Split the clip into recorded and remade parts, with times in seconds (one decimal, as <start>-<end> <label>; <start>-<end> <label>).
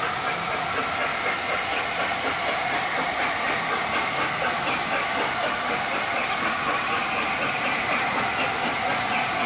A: 0.0-5.4 recorded; 5.4-8.2 remade; 8.2-9.5 recorded